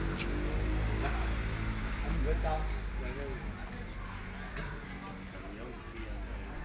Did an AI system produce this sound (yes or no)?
no